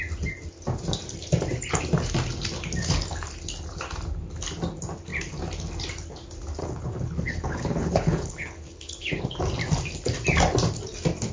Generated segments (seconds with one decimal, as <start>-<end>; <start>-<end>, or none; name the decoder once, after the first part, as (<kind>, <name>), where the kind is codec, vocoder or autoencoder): 6.6-9.4 (codec, HILCodec)